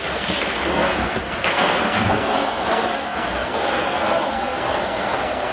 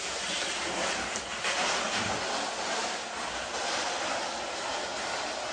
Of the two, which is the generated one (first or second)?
first